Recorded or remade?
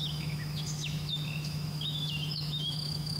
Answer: remade